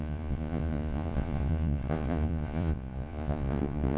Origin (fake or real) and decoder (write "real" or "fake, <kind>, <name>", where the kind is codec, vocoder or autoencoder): fake, vocoder, Vocos